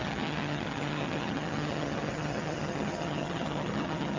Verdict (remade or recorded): remade